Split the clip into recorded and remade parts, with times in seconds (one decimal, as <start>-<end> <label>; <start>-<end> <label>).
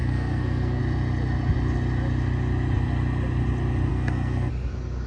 0.0-0.8 remade; 0.8-3.9 recorded; 3.9-4.5 remade; 4.5-5.1 recorded